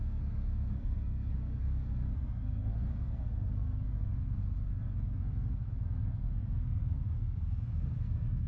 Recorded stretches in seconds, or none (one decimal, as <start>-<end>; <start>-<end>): none